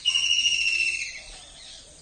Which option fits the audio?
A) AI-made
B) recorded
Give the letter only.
A